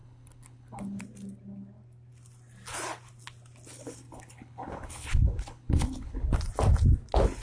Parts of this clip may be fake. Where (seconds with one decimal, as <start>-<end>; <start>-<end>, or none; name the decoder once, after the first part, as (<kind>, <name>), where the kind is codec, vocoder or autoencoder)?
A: 0.0-1.0 (codec, HILCodec); 3.7-6.3